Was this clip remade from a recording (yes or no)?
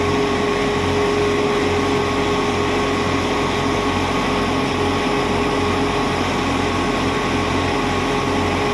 no